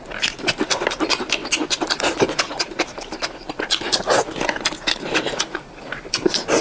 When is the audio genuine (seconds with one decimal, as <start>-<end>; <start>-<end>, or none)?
0.0-6.6